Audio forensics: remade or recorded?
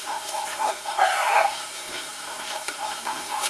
remade